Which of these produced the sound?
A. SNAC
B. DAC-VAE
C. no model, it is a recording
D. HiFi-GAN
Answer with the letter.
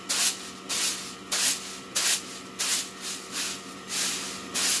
C